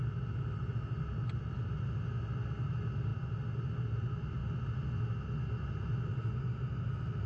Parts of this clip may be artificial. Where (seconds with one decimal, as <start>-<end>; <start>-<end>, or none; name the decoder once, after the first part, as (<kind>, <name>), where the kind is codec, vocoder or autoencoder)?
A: none